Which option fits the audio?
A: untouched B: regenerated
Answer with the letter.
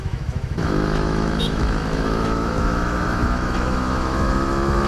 B